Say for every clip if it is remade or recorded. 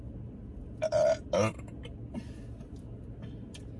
recorded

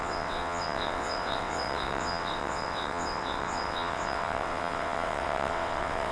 remade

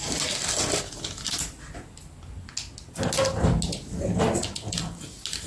recorded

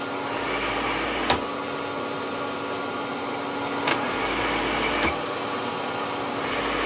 recorded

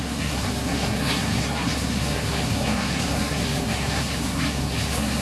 remade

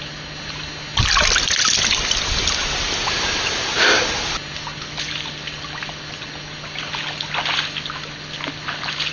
recorded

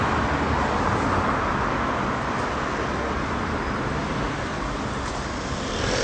recorded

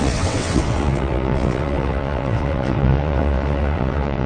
remade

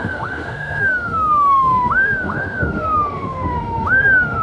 remade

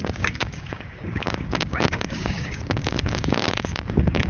remade